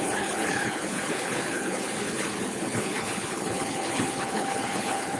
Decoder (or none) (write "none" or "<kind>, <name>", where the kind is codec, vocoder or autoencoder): codec, HILCodec